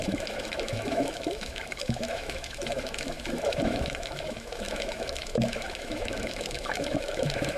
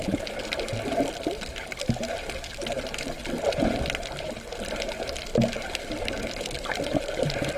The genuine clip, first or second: second